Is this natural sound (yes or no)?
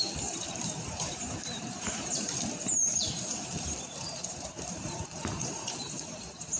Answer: no